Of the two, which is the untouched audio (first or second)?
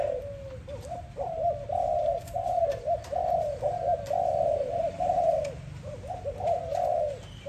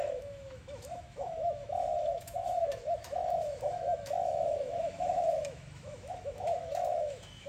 first